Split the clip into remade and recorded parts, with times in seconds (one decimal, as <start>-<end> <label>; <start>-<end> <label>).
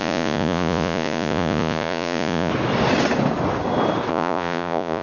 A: 0.0-2.5 remade; 2.5-4.1 recorded; 4.1-5.0 remade